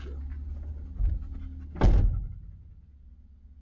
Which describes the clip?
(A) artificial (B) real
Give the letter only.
B